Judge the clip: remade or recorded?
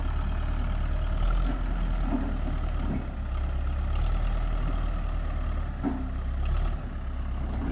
recorded